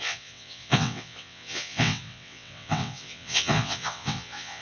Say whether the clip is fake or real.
fake